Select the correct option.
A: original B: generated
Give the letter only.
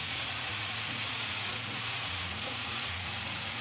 B